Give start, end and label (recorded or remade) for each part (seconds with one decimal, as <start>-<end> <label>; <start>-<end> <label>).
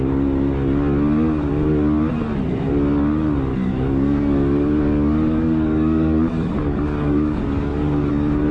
0.0-3.5 recorded; 3.5-8.1 remade; 8.1-8.5 recorded